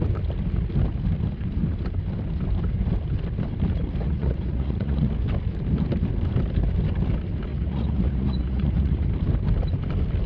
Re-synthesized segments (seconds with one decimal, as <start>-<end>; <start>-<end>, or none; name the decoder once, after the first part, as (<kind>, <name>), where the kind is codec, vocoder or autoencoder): 4.0-5.1 (vocoder, Vocos); 7.5-9.1